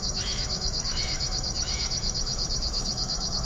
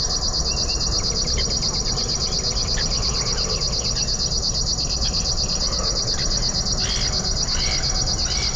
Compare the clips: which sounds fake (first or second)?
first